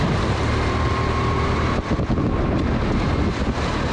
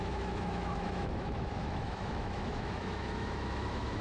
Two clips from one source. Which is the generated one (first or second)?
second